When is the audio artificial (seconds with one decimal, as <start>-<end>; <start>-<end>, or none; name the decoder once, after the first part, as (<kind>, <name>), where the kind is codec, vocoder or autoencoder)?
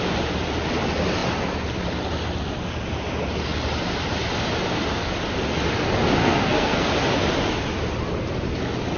6.2-6.9 (codec, SNAC)